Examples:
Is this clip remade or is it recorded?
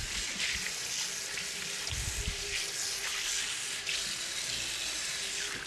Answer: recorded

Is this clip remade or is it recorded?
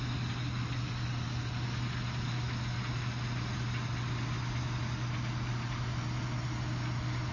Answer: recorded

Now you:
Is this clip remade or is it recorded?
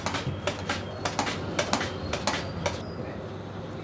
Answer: recorded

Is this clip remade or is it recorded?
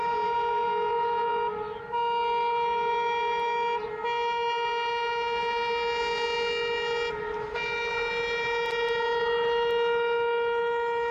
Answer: recorded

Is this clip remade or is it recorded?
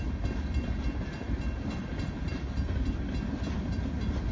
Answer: recorded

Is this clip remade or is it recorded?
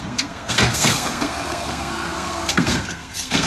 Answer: remade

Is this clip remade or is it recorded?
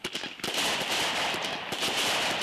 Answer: recorded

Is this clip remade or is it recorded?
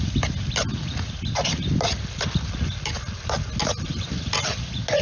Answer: recorded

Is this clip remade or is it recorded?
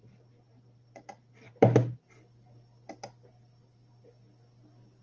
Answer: recorded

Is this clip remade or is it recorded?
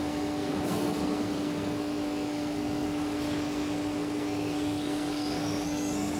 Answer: remade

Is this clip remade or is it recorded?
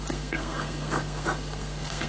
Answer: remade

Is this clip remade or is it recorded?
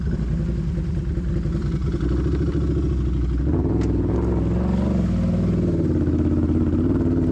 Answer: recorded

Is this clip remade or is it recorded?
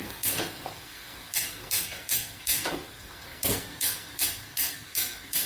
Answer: remade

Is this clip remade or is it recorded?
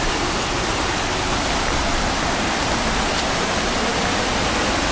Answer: recorded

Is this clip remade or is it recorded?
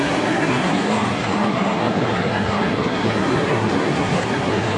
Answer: remade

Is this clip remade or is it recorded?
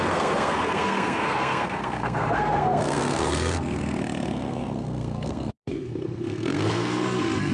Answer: remade